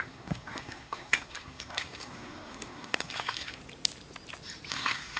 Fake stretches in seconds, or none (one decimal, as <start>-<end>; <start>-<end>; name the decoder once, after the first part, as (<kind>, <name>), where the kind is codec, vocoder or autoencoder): 0.0-3.6 (codec, SNAC); 4.7-5.2